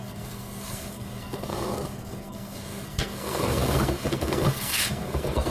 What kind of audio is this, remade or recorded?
remade